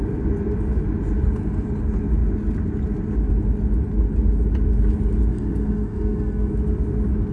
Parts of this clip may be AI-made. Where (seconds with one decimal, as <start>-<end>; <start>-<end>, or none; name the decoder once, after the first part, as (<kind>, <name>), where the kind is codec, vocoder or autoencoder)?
5.3-6.5 (codec, SNAC)